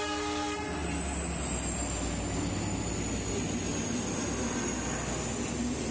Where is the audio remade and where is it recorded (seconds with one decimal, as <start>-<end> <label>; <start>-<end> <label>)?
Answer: 0.0-5.9 recorded